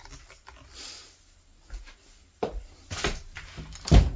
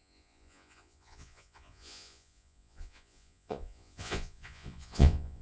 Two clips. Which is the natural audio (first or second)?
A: first